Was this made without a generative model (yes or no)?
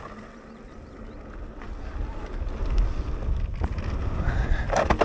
yes